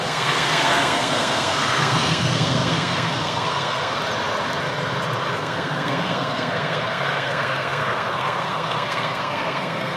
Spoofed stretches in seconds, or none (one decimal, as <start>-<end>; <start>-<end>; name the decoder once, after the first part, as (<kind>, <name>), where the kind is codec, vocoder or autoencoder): 0.0-4.0 (codec, SNAC); 5.3-10.0